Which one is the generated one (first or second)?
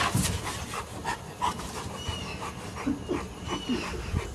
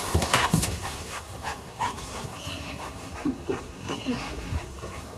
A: second